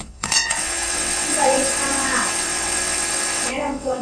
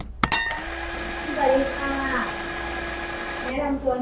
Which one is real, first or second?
second